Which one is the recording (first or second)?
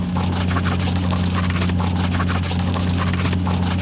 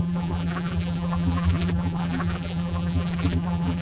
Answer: first